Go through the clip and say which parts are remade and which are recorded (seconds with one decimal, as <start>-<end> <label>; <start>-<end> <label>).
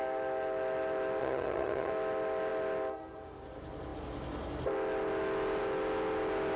0.0-1.2 recorded; 1.2-1.9 remade; 1.9-6.6 recorded